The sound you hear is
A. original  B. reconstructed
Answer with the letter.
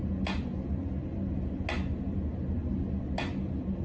A